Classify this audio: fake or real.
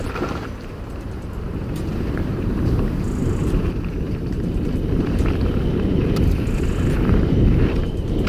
fake